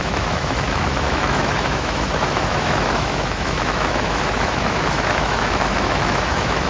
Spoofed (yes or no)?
yes